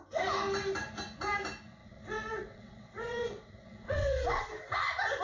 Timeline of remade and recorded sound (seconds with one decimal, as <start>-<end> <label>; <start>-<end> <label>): 0.0-1.8 recorded; 1.8-4.5 remade; 4.5-5.2 recorded